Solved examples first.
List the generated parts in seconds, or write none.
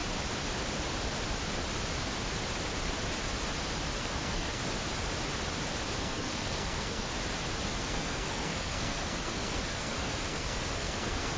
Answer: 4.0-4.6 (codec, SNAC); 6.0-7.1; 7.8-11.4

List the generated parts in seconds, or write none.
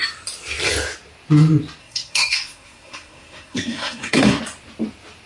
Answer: 1.8-4.4 (codec, SNAC)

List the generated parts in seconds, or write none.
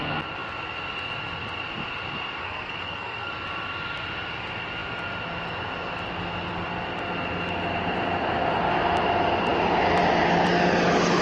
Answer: 2.4-3.3 (codec, SNAC)